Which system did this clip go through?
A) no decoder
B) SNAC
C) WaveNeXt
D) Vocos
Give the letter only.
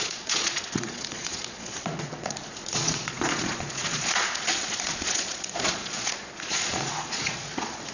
D